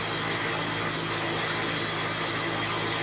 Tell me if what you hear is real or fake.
real